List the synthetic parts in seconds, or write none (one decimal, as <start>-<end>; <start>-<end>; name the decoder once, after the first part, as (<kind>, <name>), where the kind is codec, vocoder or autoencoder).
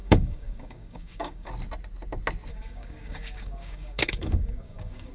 0.0-1.5 (codec, DAC); 2.5-5.1